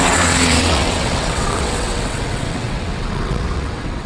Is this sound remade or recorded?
remade